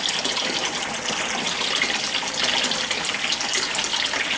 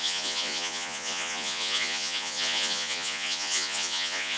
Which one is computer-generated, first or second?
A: second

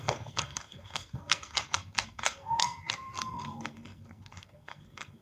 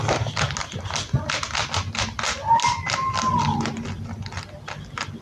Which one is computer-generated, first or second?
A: first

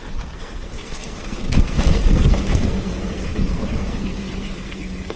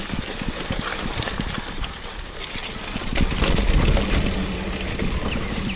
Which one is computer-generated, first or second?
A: first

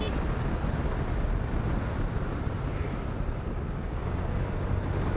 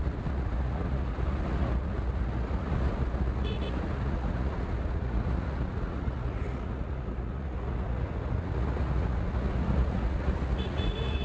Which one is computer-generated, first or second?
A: second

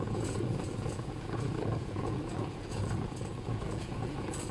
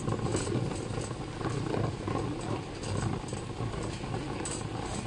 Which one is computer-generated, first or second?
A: first